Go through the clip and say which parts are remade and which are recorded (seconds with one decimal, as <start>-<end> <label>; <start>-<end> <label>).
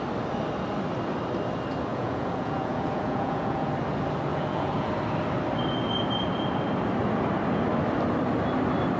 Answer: 0.0-1.9 recorded; 1.9-3.7 remade; 3.7-4.3 recorded; 4.3-4.9 remade; 4.9-9.0 recorded